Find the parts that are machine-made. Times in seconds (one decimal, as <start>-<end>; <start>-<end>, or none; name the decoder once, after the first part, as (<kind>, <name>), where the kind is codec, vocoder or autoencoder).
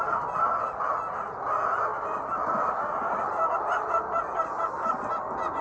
none